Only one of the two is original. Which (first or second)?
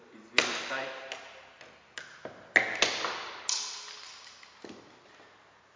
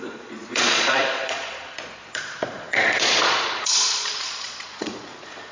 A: first